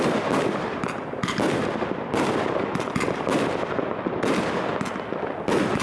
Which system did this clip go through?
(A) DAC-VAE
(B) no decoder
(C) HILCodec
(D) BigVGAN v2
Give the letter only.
B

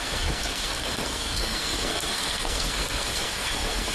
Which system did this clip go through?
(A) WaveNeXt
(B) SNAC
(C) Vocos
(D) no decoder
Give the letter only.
B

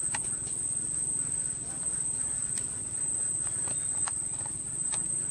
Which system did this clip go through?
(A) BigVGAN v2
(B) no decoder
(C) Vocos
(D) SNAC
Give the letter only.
B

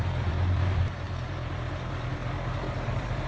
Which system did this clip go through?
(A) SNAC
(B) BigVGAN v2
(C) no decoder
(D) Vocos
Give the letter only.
B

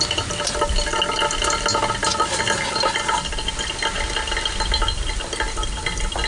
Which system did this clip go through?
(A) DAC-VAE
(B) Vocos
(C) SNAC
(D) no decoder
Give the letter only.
D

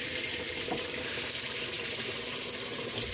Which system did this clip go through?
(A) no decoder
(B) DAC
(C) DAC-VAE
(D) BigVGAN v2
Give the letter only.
A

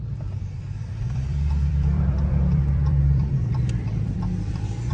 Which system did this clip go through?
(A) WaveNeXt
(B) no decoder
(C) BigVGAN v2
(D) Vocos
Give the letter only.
C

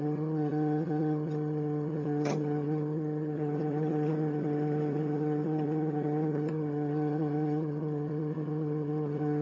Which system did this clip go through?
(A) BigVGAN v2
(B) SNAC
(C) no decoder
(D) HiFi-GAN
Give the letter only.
D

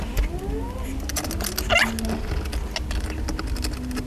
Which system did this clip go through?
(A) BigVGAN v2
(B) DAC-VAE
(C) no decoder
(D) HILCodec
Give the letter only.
C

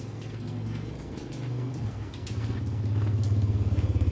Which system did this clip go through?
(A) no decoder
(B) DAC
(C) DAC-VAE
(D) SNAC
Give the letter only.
D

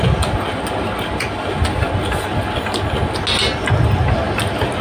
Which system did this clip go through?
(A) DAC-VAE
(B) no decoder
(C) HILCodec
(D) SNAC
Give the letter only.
B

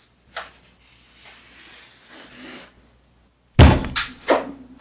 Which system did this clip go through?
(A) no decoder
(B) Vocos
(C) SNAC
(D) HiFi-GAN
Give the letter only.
A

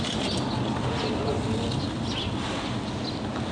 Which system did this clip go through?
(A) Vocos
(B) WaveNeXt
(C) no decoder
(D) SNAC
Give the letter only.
C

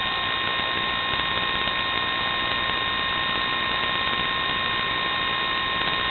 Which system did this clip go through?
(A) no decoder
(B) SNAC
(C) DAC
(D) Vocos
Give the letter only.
A